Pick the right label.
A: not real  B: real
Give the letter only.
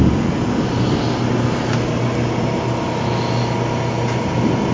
B